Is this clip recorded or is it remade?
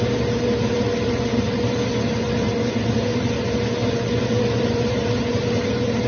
remade